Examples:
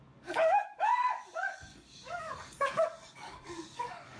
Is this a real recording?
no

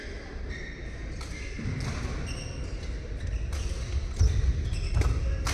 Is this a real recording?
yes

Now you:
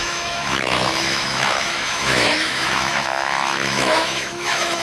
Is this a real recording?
no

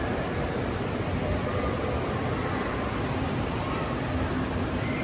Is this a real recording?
yes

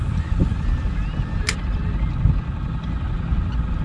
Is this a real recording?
yes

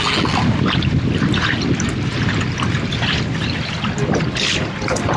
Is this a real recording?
yes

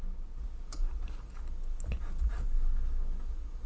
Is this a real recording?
yes